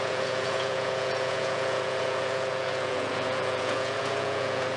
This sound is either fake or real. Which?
fake